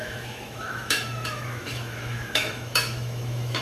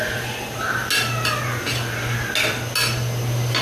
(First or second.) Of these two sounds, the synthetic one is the first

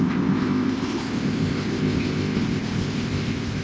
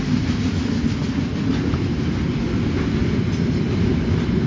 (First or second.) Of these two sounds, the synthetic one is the first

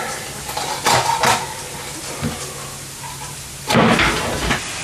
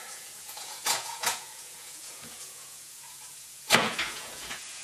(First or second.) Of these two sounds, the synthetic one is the second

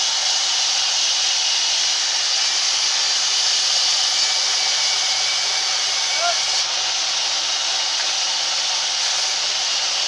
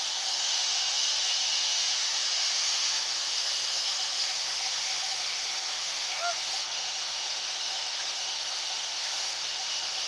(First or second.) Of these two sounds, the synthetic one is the second